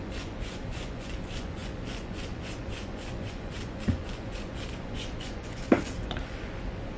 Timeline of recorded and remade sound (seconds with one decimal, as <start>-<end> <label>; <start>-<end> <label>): 0.0-7.0 remade